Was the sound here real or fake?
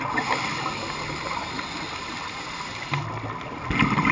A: real